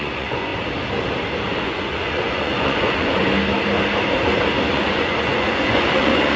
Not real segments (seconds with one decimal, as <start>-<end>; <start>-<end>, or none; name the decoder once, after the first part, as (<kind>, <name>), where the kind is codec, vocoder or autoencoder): 0.0-0.5 (vocoder, Vocos); 1.6-3.2; 4.7-6.4